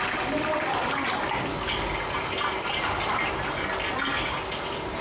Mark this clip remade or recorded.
recorded